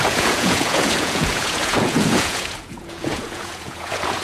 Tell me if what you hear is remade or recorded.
remade